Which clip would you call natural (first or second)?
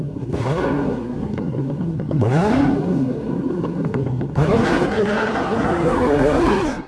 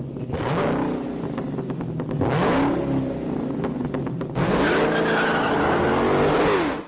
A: second